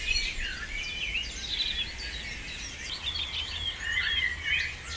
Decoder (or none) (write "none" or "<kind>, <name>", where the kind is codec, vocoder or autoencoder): none